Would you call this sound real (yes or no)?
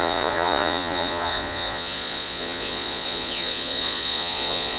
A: no